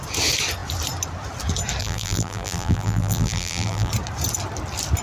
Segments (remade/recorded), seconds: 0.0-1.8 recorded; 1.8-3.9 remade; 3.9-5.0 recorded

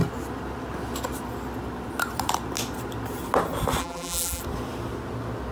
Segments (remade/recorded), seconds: 0.0-3.8 recorded; 3.8-4.4 remade; 4.4-5.5 recorded

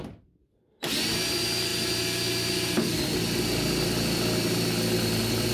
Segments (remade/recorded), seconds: 0.0-5.5 recorded